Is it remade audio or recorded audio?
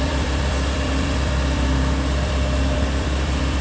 remade